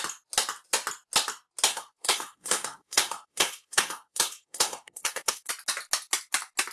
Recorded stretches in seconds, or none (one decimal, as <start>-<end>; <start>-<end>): 0.0-1.7; 5.5-6.7